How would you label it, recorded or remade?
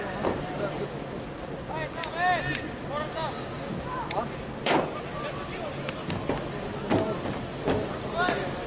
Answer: recorded